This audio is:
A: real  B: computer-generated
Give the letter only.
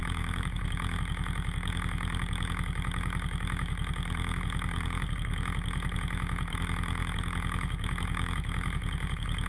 B